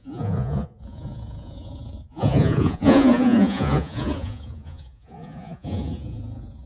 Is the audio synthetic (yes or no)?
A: yes